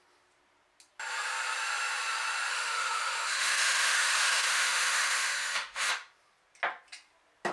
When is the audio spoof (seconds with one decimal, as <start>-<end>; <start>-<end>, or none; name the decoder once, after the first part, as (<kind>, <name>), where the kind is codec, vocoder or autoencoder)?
2.5-5.9 (autoencoder, DAC-VAE)